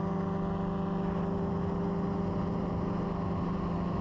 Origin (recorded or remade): recorded